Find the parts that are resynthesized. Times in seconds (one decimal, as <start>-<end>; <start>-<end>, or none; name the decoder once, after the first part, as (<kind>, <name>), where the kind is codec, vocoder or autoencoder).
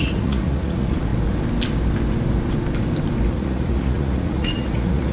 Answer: 0.0-1.1 (vocoder, Vocos); 3.3-5.1